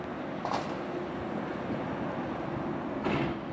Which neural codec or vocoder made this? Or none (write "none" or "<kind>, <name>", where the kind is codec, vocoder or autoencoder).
none